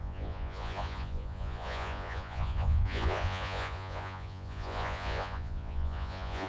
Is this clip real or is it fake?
fake